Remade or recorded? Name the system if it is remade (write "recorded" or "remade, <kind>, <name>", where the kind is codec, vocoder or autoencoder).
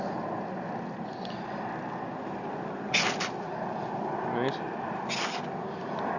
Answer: recorded